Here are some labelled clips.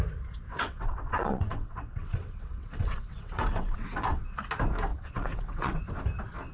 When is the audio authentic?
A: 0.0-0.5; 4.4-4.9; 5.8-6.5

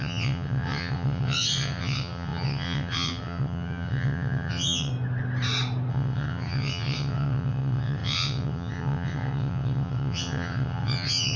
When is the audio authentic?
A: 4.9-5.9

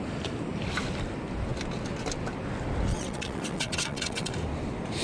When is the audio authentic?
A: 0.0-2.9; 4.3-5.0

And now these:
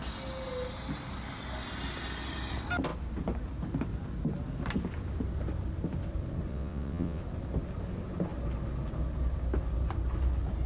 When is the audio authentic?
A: 0.0-6.5; 7.2-10.7